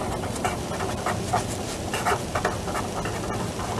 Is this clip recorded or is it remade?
recorded